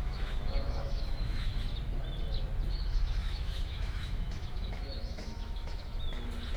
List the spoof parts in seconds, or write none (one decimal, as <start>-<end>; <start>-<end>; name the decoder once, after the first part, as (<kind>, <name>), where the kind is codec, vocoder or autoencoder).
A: 0.0-1.5 (autoencoder, DAC-VAE); 2.7-5.9